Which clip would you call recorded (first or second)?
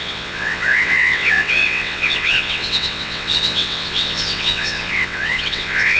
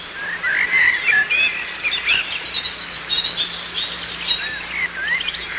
second